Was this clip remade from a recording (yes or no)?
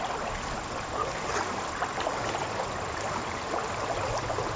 no